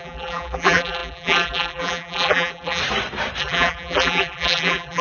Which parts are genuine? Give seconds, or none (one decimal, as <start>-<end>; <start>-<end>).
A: 2.8-3.4